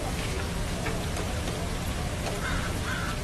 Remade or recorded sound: recorded